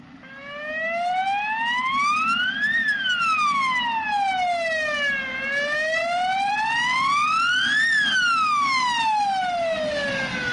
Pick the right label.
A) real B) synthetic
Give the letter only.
A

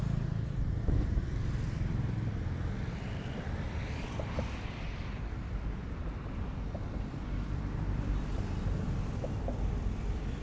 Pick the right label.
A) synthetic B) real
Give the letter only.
A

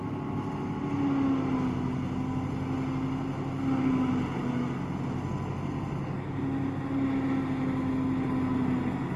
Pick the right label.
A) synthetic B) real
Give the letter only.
B